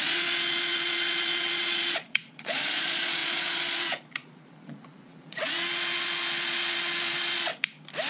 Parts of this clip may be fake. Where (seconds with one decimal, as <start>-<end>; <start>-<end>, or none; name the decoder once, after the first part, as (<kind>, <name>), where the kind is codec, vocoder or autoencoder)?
0.0-7.5 (vocoder, Vocos)